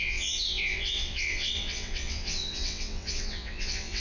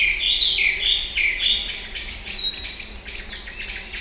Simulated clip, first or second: first